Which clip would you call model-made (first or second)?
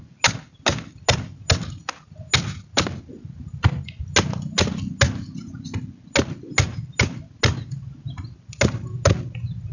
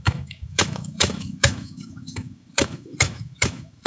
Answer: second